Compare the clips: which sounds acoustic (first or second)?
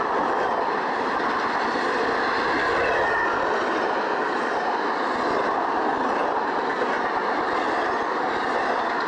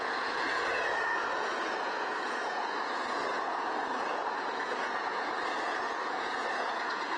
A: first